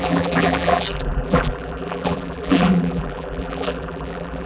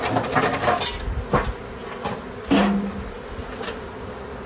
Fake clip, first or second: first